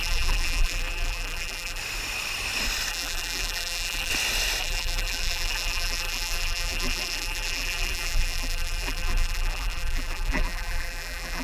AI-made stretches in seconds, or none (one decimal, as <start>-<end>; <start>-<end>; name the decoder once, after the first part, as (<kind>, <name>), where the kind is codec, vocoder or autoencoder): 0.0-1.8 (vocoder, BigVGAN v2); 2.9-4.1; 4.6-11.4